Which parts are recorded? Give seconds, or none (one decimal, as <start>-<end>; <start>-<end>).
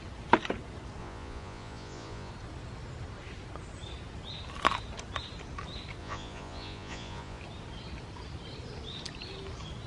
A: 0.0-1.0; 2.3-6.0; 7.4-9.9